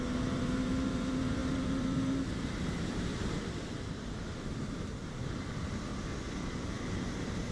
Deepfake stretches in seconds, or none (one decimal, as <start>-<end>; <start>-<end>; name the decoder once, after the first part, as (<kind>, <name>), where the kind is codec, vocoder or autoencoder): 0.0-3.1 (vocoder, BigVGAN v2); 3.9-5.9; 7.0-7.5